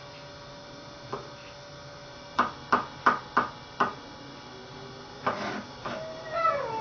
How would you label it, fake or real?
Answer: real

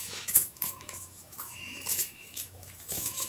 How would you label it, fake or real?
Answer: fake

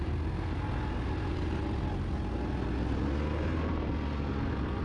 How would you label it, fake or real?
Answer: real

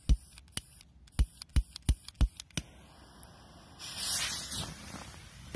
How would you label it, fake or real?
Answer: real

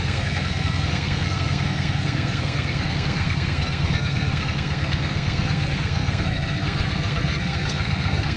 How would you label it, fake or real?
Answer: fake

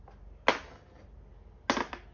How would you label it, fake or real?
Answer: real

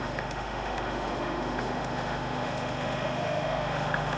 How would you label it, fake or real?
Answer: fake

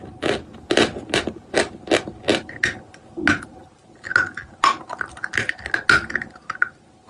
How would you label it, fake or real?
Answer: real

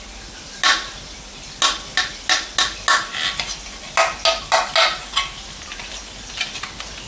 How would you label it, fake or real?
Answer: real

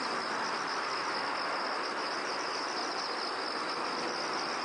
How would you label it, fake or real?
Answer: real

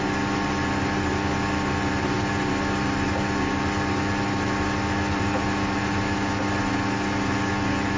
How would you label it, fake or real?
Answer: real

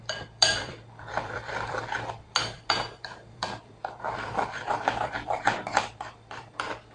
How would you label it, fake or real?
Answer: fake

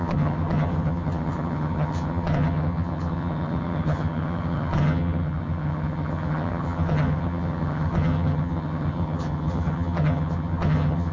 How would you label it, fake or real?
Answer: fake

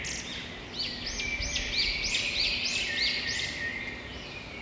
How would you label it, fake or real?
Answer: real